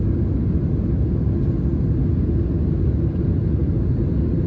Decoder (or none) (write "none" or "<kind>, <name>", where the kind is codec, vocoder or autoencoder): none